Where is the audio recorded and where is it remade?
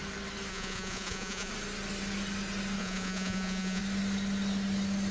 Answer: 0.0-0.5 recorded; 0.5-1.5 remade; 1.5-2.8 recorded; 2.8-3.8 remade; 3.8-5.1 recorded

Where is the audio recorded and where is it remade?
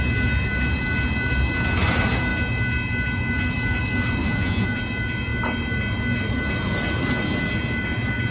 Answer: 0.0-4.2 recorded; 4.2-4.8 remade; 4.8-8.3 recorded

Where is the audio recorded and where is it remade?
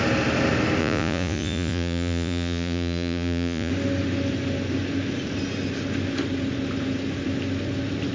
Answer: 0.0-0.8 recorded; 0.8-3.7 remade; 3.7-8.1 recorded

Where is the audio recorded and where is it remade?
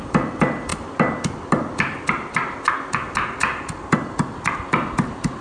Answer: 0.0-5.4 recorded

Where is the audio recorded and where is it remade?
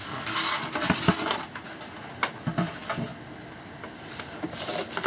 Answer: 0.0-5.1 recorded